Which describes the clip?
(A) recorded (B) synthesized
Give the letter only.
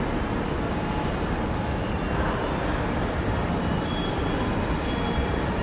A